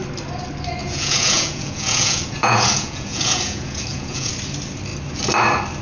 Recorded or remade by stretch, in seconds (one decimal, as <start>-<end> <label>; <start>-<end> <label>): 0.0-0.8 recorded; 0.8-4.3 remade; 4.3-5.8 recorded